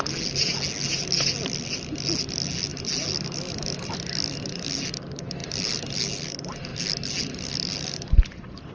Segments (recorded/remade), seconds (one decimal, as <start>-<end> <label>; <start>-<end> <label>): 0.0-8.7 recorded